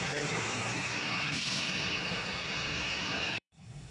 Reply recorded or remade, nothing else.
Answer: remade